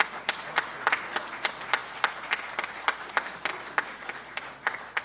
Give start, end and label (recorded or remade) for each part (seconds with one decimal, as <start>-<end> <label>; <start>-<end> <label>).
0.0-5.0 recorded